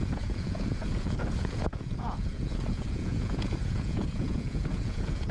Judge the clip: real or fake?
fake